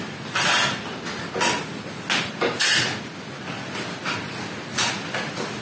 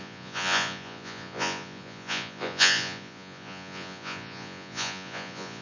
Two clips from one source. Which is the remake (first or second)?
second